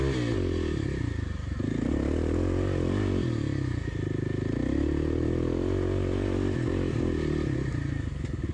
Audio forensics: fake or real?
real